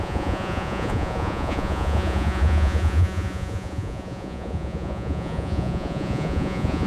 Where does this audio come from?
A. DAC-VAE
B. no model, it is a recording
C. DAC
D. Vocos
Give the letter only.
D